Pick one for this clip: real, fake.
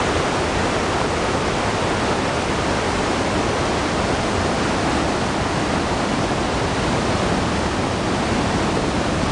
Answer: real